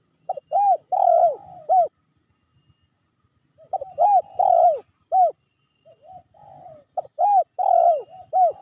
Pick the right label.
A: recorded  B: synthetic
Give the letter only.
A